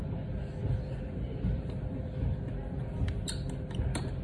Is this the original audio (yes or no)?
yes